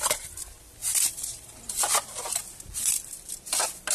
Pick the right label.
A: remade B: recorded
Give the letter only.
A